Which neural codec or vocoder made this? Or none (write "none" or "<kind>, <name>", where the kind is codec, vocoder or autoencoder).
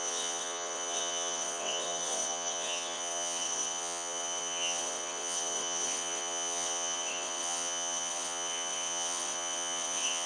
vocoder, WaveNeXt